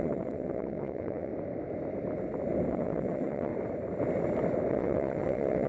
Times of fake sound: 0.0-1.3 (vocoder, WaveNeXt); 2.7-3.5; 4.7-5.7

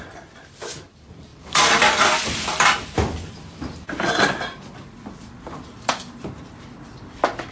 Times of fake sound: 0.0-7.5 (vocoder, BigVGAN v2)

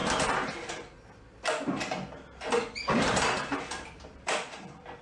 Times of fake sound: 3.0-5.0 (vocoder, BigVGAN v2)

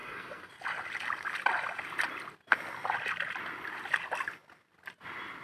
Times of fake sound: 0.0-0.5 (codec, SNAC)

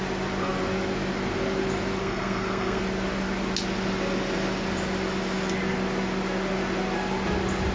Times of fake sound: 2.0-2.8 (codec, SNAC)

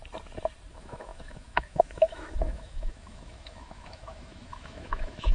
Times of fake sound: 0.7-5.3 (autoencoder, DAC-VAE)